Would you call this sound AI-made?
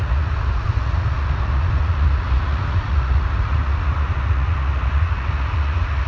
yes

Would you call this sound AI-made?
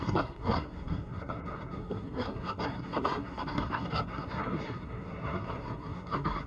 yes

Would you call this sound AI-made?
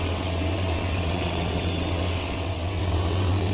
yes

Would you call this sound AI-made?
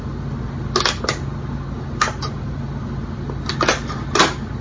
no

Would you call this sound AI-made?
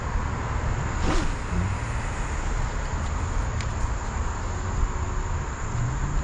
no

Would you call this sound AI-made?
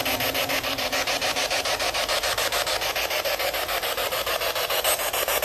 no